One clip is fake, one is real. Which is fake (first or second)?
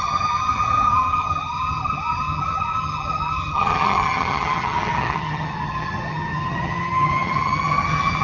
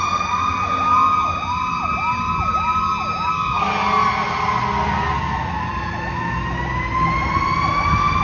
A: first